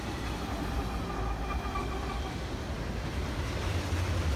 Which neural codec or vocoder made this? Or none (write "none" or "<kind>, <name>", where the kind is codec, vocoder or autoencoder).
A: none